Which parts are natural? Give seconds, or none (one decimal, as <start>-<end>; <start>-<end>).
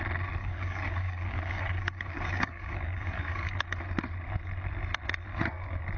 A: 0.0-0.4; 3.8-6.0